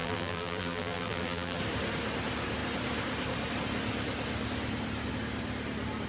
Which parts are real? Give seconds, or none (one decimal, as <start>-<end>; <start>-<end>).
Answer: 1.6-6.1